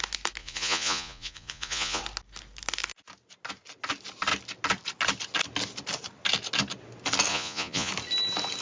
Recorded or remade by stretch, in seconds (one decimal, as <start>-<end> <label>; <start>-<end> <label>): 0.0-0.4 recorded; 0.4-2.0 remade; 2.0-7.3 recorded; 7.3-7.9 remade; 7.9-8.6 recorded